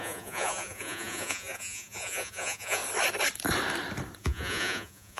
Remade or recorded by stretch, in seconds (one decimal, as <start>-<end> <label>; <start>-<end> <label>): 0.0-2.8 remade; 2.8-4.2 recorded; 4.2-5.2 remade